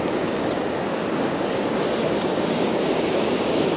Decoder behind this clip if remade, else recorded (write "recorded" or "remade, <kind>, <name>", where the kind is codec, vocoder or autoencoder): remade, codec, DAC